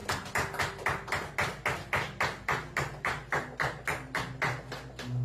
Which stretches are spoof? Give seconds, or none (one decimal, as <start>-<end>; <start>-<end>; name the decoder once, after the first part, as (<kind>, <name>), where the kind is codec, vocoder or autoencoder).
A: none